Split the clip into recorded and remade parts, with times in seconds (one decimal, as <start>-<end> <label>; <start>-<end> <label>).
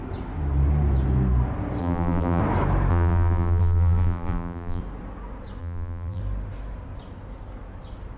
0.0-1.8 recorded; 1.8-2.4 remade; 2.4-2.9 recorded; 2.9-4.8 remade; 4.8-5.6 recorded; 5.6-6.2 remade; 6.2-8.2 recorded